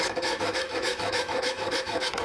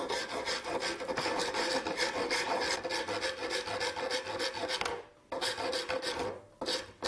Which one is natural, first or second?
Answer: second